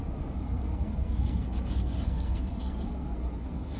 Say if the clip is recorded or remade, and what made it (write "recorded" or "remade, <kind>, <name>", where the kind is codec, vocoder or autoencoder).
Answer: remade, codec, SNAC